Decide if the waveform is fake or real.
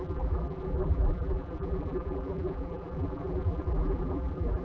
fake